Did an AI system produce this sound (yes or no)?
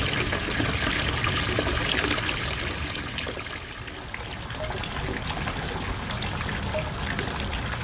no